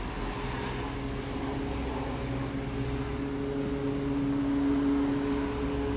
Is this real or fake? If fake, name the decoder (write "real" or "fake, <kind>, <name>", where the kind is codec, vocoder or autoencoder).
real